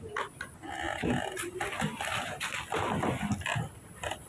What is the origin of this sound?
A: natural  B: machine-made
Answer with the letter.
A